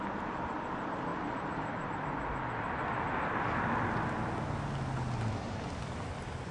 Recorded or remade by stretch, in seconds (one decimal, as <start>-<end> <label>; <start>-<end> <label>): 0.0-1.1 recorded; 1.1-1.9 remade; 1.9-6.5 recorded